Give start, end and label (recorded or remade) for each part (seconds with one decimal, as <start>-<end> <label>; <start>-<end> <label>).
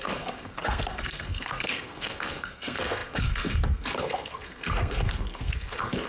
0.0-6.1 remade